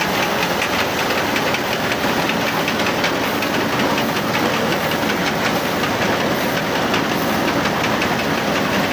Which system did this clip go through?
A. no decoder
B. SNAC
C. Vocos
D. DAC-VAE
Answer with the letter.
A